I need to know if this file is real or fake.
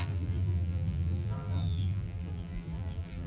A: fake